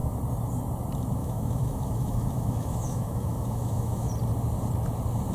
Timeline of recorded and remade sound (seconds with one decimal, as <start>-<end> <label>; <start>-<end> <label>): 0.0-1.2 recorded; 1.2-4.1 remade; 4.1-5.3 recorded